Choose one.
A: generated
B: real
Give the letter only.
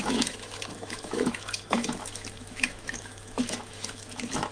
A